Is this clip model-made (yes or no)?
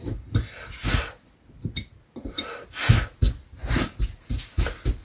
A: no